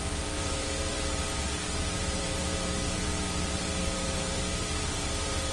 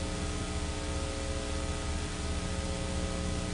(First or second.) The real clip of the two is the second